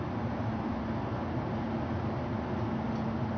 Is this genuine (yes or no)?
yes